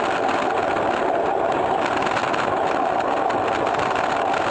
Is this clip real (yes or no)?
yes